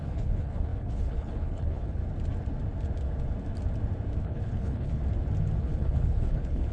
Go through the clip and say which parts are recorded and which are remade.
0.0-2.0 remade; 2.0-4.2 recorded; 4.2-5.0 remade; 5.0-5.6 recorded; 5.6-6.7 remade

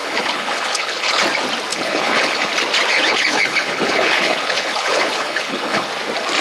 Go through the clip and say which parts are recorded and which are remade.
0.0-1.2 remade; 1.2-1.7 recorded; 1.7-2.5 remade; 2.5-2.9 recorded; 2.9-5.9 remade; 5.9-6.4 recorded

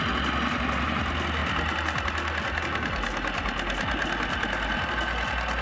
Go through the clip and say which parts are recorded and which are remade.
0.0-5.6 recorded

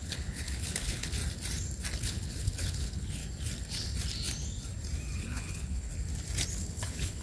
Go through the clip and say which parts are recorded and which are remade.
0.0-1.2 remade; 1.2-2.0 recorded; 2.0-3.2 remade; 3.2-5.2 recorded; 5.2-5.9 remade; 5.9-6.6 recorded; 6.6-7.2 remade

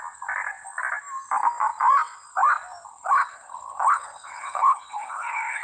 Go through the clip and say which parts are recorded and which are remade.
0.0-2.9 recorded; 2.9-5.6 remade